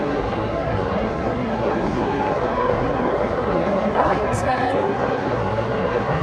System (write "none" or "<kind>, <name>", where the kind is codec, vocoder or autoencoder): codec, SNAC